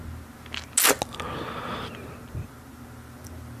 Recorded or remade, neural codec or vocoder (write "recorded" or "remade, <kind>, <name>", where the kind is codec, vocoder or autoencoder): recorded